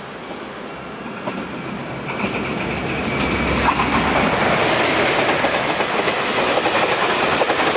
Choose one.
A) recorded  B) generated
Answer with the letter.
A